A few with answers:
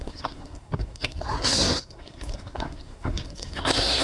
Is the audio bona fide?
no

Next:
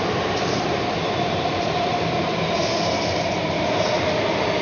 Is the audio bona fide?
no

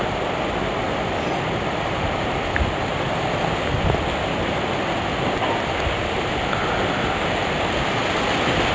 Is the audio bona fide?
yes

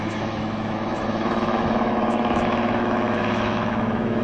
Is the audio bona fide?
no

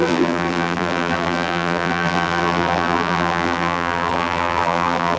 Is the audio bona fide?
no